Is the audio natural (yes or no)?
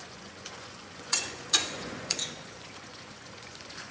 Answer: no